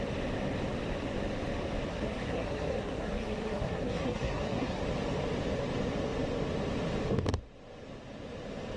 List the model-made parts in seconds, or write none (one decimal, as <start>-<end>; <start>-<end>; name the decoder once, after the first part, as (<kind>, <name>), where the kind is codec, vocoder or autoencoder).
1.9-4.8 (codec, SNAC)